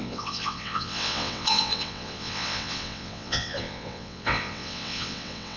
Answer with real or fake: fake